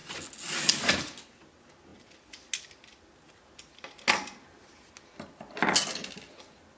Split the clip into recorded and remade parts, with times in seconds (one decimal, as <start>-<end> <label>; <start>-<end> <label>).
0.0-6.8 recorded